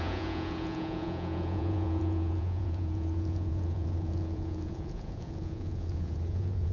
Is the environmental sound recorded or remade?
remade